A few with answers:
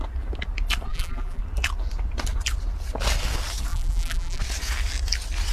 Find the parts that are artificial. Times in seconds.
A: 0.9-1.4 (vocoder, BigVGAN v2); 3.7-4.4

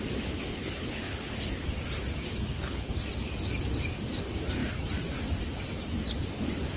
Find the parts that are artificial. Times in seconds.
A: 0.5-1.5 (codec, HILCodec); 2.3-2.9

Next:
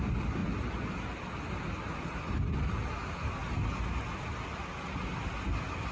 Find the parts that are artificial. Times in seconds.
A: 0.0-3.4 (vocoder, BigVGAN v2)

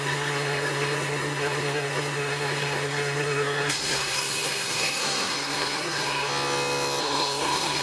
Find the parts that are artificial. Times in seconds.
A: 0.0-6.3 (codec, SNAC); 7.0-7.8